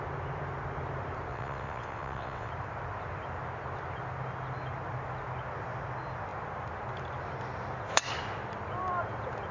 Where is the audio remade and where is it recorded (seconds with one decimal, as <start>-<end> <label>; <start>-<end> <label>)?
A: 0.0-1.3 recorded; 1.3-2.5 remade; 2.5-9.5 recorded